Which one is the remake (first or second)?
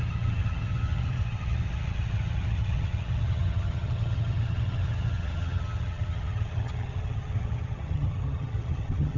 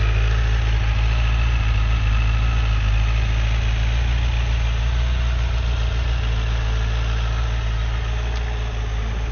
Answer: first